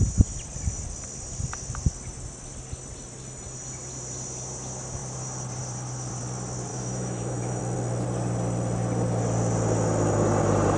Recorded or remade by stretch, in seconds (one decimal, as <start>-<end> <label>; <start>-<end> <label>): 0.0-6.7 recorded; 6.7-7.6 remade; 7.6-10.8 recorded